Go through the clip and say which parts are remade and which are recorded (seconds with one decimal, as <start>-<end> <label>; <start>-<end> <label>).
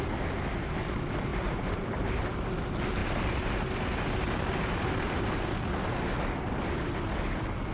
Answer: 0.0-1.3 recorded; 1.3-2.1 remade; 2.1-7.7 recorded